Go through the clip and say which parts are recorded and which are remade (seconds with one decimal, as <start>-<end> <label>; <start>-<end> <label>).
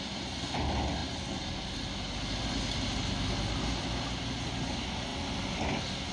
0.0-6.1 recorded